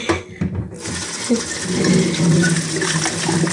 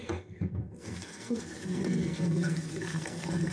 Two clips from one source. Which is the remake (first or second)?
second